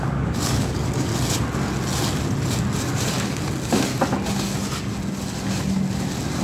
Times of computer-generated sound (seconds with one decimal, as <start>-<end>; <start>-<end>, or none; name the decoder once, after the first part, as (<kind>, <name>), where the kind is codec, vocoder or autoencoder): 0.0-1.1 (codec, DAC); 2.8-3.9